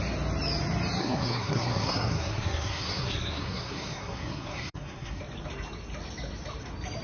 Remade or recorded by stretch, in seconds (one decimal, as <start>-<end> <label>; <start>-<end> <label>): 0.0-1.0 recorded; 1.0-5.2 remade; 5.2-7.0 recorded